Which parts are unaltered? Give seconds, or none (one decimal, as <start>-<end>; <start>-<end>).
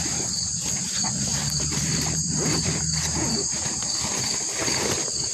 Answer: 0.0-1.3; 2.8-5.3